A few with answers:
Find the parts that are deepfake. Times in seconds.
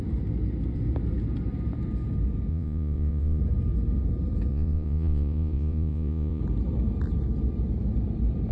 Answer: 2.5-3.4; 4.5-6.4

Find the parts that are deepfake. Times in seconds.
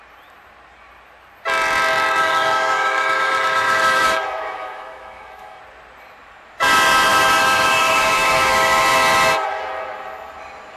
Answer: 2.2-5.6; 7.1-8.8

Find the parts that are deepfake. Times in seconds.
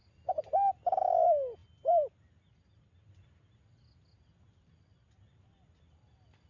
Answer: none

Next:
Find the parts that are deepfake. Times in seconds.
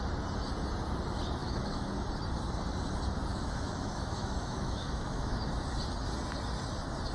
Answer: 1.4-1.9; 3.3-5.4